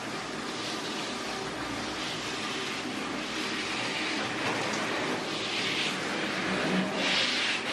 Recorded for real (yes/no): yes